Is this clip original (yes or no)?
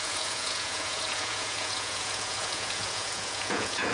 no